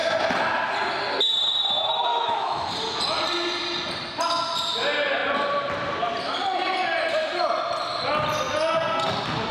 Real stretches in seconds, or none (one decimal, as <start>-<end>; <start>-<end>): 0.0-2.1; 2.7-9.5